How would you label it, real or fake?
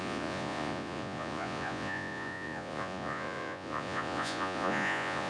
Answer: fake